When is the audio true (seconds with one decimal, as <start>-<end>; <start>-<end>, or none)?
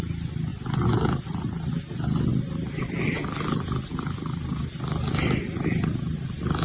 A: 0.5-1.7